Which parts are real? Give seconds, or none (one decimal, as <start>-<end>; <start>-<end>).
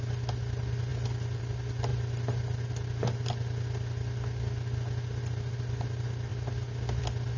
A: 0.0-7.4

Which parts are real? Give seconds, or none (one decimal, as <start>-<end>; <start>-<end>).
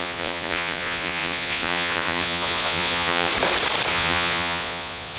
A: 3.3-3.9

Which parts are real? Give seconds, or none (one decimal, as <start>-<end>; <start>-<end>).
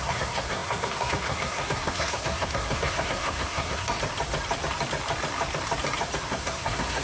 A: 3.9-6.3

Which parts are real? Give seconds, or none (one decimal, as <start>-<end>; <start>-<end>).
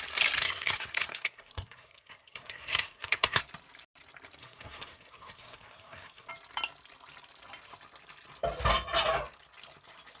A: 0.0-0.4; 3.4-4.4; 6.3-10.2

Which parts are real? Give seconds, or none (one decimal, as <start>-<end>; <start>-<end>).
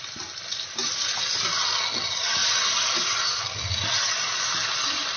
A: 0.0-5.2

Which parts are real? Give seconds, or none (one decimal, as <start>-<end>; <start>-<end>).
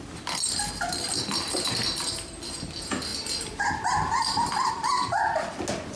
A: 0.0-3.1; 4.7-6.0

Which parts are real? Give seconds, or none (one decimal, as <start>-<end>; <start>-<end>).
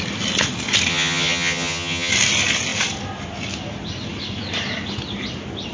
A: 0.0-0.9; 2.1-5.7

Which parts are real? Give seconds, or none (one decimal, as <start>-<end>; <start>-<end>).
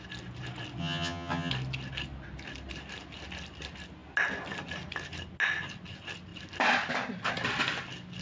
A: 0.0-0.8; 1.5-8.2